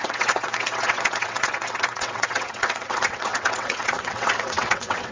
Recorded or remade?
remade